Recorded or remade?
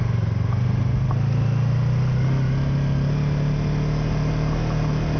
recorded